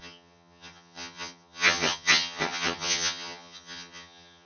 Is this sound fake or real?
fake